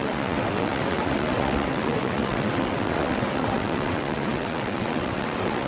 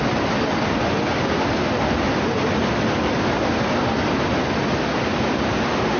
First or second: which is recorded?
second